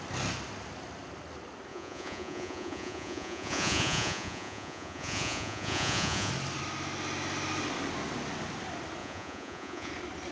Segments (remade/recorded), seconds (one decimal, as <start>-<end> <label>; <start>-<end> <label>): 0.0-1.7 recorded; 1.7-6.3 remade; 6.3-9.0 recorded; 9.0-9.9 remade; 9.9-10.3 recorded